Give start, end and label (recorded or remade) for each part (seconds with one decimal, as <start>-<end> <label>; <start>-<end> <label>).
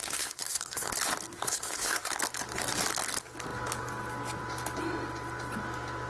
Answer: 0.0-0.9 remade; 0.9-1.3 recorded; 1.3-2.2 remade; 2.2-6.1 recorded